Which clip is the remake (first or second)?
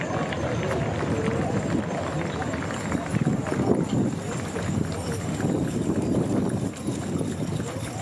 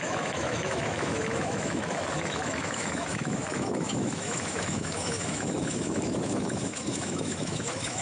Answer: second